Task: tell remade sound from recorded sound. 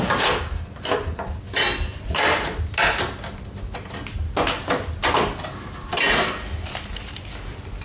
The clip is recorded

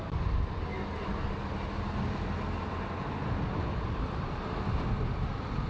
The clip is recorded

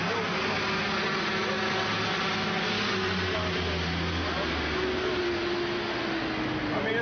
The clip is recorded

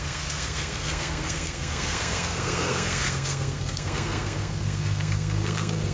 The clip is remade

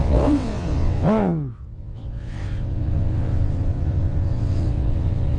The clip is remade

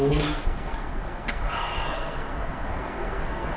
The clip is remade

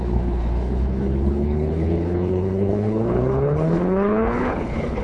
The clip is remade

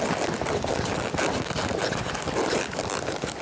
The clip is remade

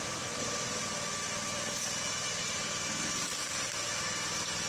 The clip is recorded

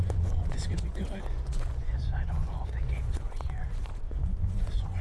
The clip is remade